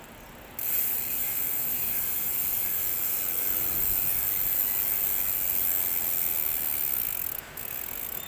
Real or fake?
real